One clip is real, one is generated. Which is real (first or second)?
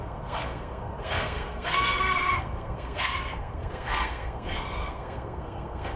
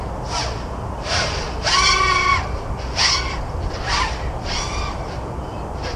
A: second